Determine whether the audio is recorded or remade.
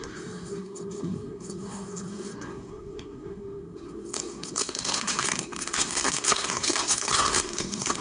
remade